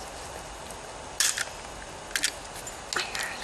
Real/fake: real